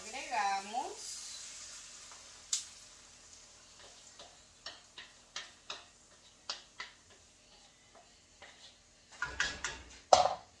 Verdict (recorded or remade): recorded